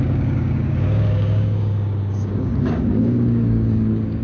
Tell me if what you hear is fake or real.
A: fake